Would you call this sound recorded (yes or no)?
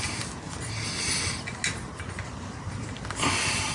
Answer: yes